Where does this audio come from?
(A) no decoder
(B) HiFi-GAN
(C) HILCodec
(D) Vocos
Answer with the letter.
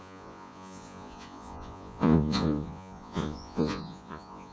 D